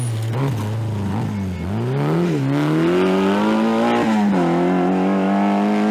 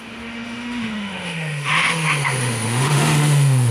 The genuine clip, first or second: first